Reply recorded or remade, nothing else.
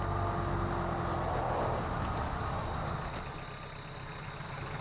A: recorded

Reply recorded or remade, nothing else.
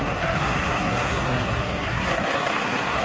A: remade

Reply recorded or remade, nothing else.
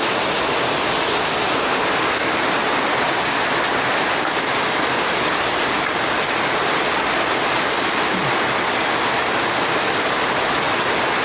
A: recorded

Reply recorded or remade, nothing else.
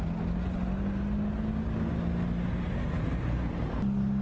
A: recorded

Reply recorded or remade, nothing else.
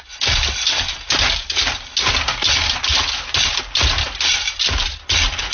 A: recorded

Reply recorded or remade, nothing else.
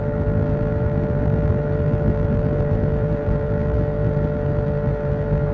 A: remade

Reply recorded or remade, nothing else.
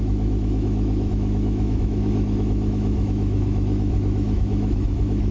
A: remade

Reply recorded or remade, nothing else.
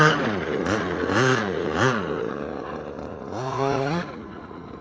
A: remade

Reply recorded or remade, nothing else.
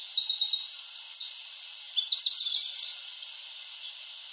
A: recorded